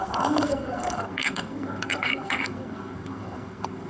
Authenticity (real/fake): fake